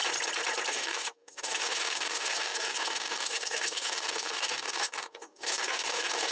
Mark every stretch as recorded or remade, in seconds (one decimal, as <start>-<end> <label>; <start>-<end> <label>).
0.0-0.7 recorded; 0.7-6.3 remade